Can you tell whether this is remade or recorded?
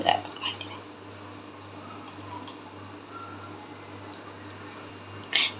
recorded